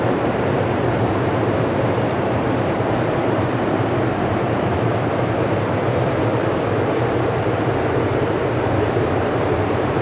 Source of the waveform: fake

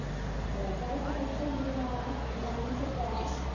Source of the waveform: real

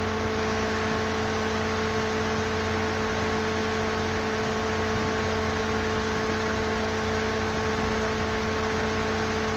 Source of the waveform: real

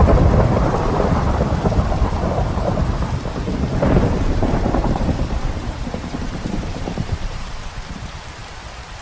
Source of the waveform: fake